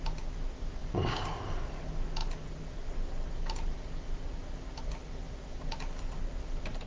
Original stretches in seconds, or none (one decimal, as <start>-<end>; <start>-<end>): 0.0-0.8; 1.4-6.9